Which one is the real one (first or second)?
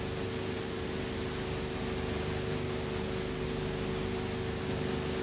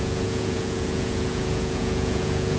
first